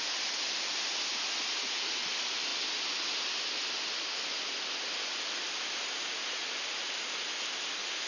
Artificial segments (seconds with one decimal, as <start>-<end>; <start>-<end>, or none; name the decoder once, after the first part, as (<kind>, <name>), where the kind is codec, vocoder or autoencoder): none